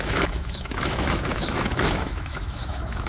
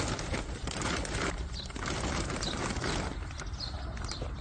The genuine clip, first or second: second